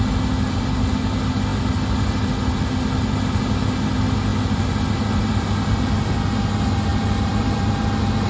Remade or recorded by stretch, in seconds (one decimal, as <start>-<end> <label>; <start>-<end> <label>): 0.0-6.9 recorded; 6.9-7.8 remade; 7.8-8.3 recorded